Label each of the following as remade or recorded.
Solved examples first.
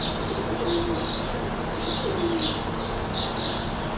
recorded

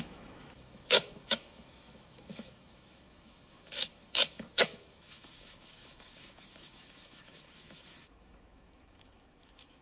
remade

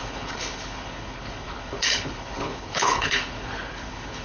remade